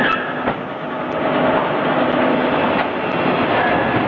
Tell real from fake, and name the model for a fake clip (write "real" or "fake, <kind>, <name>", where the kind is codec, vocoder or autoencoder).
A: real